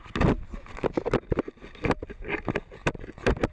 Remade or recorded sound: recorded